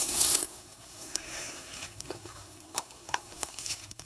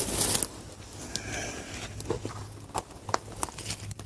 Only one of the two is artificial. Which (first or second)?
first